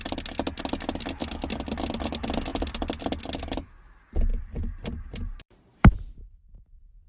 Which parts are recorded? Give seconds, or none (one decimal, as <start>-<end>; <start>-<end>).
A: 0.0-4.3; 5.9-7.1